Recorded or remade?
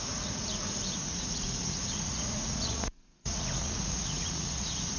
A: remade